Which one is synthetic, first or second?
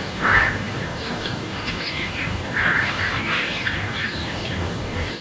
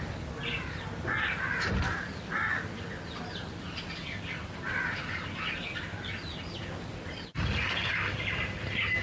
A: first